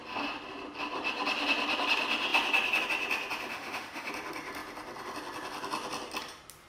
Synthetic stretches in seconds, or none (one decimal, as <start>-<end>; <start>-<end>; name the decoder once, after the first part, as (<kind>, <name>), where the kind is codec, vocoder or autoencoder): 3.5-4.1 (autoencoder, DAC-VAE)